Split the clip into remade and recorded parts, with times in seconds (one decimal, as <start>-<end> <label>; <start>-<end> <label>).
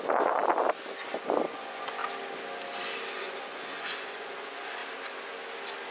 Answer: 0.0-0.4 remade; 0.4-1.5 recorded; 1.5-2.0 remade; 2.0-3.1 recorded; 3.1-4.8 remade; 4.8-5.9 recorded